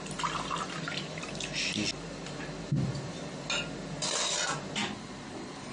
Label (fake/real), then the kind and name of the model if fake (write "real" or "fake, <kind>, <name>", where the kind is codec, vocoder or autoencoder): real